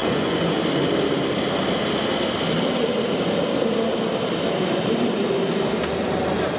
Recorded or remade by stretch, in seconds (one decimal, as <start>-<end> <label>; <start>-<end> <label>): 0.0-0.6 remade; 0.6-6.6 recorded